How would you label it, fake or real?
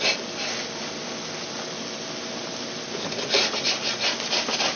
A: real